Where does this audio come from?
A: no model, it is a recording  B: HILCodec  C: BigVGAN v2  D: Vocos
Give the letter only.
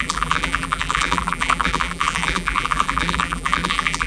C